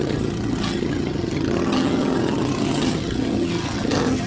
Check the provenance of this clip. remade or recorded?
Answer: remade